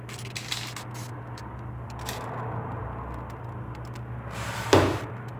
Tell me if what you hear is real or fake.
real